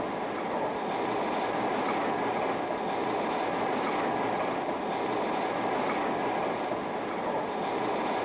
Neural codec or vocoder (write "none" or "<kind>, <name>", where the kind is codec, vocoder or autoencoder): none